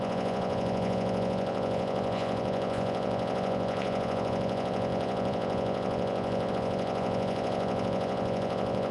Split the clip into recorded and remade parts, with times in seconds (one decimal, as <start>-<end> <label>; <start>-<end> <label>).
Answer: 0.0-8.9 remade